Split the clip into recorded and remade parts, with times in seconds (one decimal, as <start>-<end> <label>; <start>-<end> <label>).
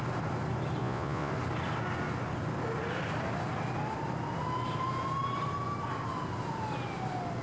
0.0-0.8 recorded; 0.8-1.3 remade; 1.3-7.4 recorded